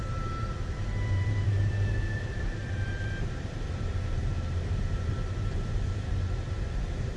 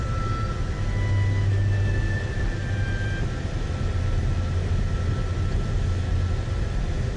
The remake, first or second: first